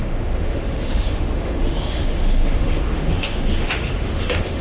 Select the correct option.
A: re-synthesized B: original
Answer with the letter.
A